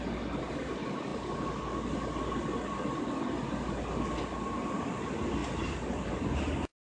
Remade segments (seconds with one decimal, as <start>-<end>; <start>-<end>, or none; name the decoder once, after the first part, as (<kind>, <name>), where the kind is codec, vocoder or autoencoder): none